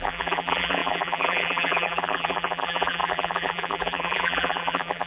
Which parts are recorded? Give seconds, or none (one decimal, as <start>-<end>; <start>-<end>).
none